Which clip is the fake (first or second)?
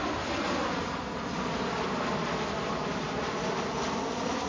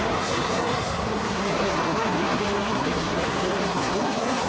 second